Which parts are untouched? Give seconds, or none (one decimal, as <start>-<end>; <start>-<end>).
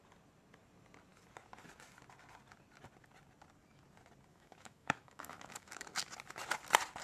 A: 0.0-4.3; 6.1-7.0